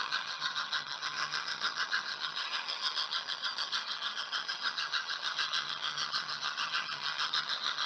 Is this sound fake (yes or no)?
yes